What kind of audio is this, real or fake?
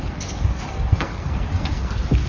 fake